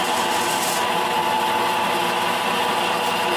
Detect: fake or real real